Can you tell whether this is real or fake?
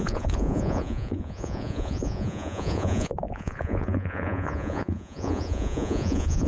fake